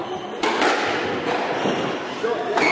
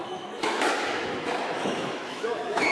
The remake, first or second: second